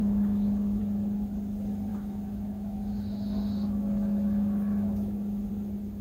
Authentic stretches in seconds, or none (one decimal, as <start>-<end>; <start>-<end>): 0.8-1.9; 5.5-6.0